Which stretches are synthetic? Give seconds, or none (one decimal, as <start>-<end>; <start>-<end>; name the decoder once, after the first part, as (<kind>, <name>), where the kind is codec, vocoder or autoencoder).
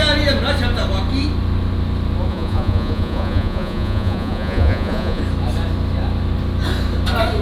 2.3-5.2 (vocoder, Vocos)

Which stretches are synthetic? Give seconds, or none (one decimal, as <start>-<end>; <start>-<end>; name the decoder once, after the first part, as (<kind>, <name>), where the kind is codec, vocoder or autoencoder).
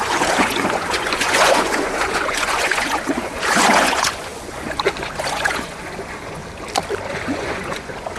0.0-6.4 (vocoder, Vocos); 7.1-8.2